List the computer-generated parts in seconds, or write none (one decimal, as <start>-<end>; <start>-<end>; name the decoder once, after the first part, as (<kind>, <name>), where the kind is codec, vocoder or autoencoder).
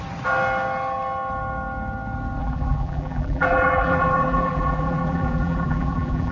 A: 2.4-6.3 (vocoder, BigVGAN v2)